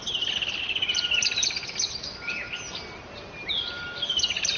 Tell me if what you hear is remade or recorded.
recorded